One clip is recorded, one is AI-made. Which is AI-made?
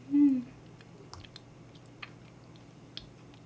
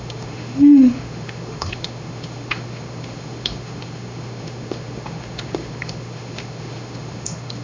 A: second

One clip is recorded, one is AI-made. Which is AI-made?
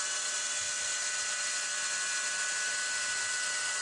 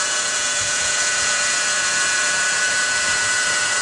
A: second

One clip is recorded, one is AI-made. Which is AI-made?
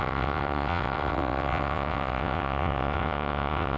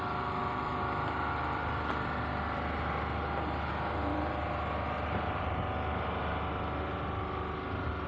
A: first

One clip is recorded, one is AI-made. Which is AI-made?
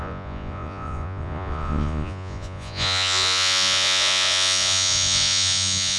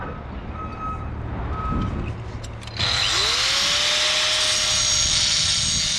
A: first